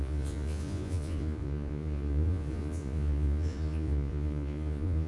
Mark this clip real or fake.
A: fake